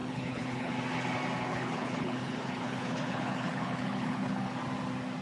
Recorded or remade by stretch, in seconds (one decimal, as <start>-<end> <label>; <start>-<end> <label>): 0.0-0.7 remade; 0.7-1.5 recorded; 1.5-4.6 remade; 4.6-5.2 recorded